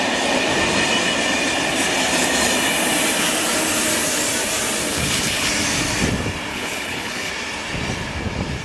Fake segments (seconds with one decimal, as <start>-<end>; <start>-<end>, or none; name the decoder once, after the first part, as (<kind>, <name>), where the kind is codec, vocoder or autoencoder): 4.9-5.5 (codec, HILCodec); 6.5-7.3